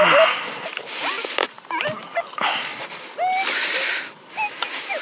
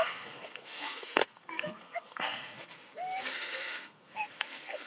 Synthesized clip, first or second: second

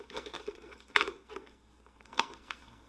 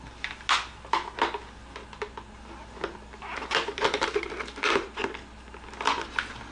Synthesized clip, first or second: first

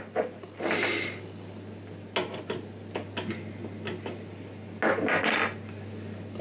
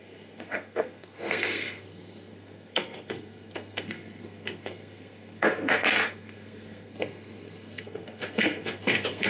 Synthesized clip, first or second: second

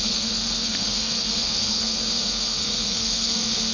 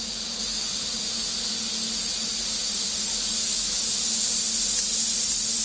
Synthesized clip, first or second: first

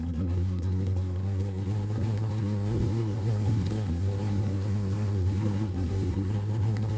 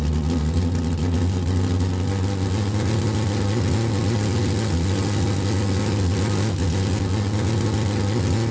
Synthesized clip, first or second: first